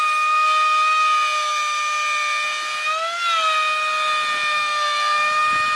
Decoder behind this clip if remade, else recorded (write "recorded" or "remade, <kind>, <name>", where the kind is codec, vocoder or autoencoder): recorded